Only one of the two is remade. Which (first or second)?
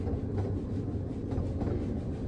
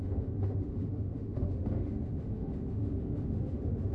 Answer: second